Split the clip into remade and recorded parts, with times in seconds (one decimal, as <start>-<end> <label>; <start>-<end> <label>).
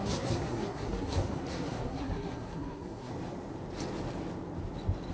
0.0-3.1 remade; 3.1-5.1 recorded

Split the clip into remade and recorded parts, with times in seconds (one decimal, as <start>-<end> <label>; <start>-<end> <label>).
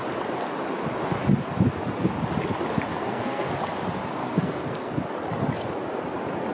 0.0-2.9 recorded; 2.9-3.5 remade; 3.5-4.2 recorded; 4.2-4.9 remade; 4.9-6.5 recorded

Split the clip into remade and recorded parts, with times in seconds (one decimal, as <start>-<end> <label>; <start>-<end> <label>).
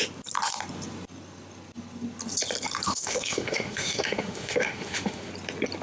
0.0-2.9 recorded; 2.9-5.3 remade; 5.3-5.8 recorded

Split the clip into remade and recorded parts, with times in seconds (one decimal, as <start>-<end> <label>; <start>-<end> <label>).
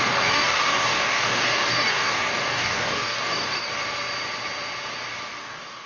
0.0-3.7 remade; 3.7-5.4 recorded; 5.4-5.9 remade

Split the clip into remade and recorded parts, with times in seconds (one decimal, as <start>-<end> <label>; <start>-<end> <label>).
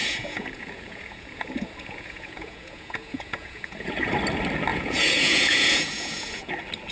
0.0-4.1 remade; 4.1-4.7 recorded; 4.7-6.5 remade; 6.5-6.9 recorded